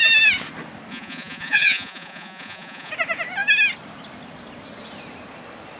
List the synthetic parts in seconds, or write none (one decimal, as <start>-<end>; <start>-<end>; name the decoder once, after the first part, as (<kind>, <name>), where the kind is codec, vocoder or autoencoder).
0.9-2.9 (vocoder, Vocos)